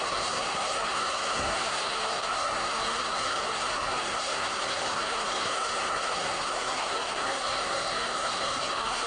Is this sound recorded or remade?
remade